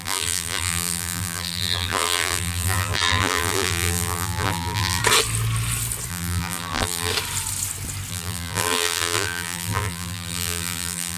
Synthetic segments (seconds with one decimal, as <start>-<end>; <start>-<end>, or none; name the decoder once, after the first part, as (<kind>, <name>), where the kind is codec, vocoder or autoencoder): 0.0-5.0 (vocoder, BigVGAN v2); 6.1-7.1; 8.1-11.2